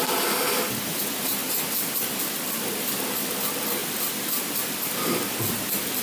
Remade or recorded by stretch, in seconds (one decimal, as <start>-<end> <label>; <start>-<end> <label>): 0.0-6.0 recorded